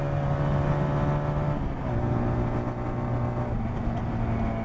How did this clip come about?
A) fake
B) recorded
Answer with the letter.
B